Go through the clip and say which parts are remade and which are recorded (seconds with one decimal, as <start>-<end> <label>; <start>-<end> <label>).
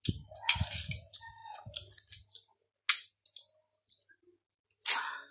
0.0-5.3 recorded